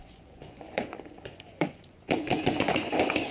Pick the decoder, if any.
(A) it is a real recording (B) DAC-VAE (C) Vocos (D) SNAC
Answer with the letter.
C